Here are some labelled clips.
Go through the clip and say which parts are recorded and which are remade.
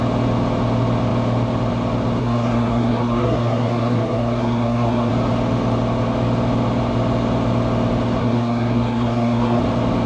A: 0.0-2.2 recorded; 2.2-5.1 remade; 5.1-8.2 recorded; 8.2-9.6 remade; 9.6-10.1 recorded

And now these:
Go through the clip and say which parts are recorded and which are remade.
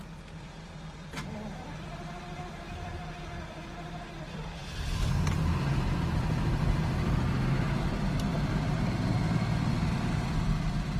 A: 0.0-8.3 recorded; 8.3-11.0 remade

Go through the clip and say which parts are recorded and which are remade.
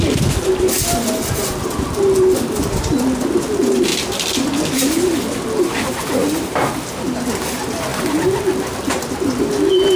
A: 0.0-7.9 recorded; 7.9-9.0 remade; 9.0-10.0 recorded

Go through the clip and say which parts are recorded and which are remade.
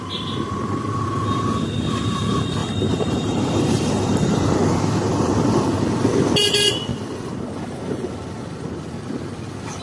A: 0.0-2.6 recorded; 2.6-3.9 remade; 3.9-4.3 recorded; 4.3-5.8 remade; 5.8-6.9 recorded; 6.9-8.1 remade; 8.1-9.8 recorded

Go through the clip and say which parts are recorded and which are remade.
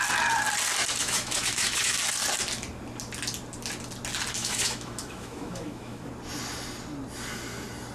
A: 0.0-1.0 recorded; 1.0-2.0 remade; 2.0-4.4 recorded; 4.4-6.1 remade; 6.1-7.9 recorded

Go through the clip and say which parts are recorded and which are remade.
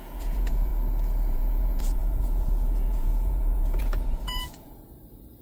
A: 0.0-0.7 remade; 0.7-1.3 recorded; 1.3-5.4 remade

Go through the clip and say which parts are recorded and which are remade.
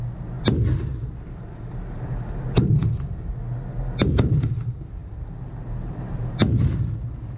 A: 0.0-7.4 recorded